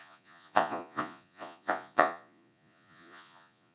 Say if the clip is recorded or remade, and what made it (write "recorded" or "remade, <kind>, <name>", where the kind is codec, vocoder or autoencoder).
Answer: remade, vocoder, Vocos